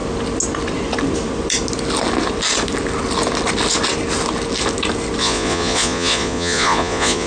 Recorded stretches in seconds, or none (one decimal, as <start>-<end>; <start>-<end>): 0.0-5.2